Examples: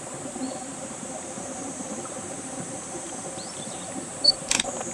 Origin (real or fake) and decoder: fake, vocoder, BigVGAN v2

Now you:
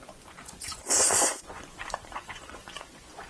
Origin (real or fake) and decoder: fake, vocoder, Vocos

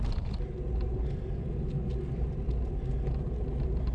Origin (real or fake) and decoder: real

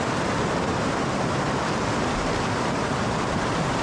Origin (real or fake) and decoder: real